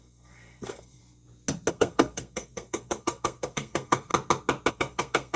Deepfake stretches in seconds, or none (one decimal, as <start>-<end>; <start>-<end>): 0.0-1.0; 1.7-4.1; 4.7-5.4